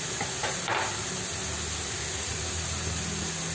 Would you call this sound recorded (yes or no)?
yes